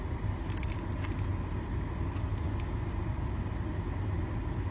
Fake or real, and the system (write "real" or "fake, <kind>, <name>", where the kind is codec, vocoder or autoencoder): real